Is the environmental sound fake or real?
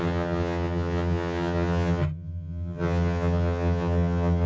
fake